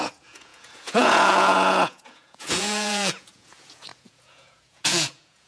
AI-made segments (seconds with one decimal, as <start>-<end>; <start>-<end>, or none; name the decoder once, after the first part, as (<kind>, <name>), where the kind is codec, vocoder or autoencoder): 0.0-5.5 (vocoder, Vocos)